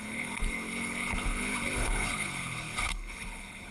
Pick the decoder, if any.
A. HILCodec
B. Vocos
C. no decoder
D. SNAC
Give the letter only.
A